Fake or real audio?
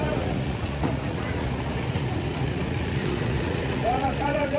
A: fake